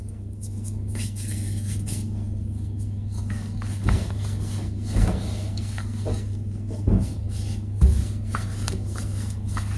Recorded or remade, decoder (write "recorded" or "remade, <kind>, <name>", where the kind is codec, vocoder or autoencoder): remade, codec, SNAC